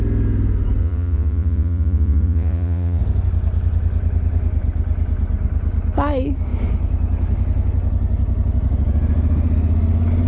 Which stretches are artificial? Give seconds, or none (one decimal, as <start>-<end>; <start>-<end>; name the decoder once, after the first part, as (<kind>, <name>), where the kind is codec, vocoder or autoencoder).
0.8-3.0 (vocoder, Vocos)